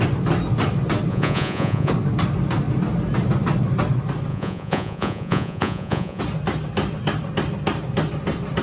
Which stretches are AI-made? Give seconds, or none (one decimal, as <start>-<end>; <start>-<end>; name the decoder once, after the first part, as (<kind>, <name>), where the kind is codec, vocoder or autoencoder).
1.1-1.9 (vocoder, Vocos); 4.3-6.2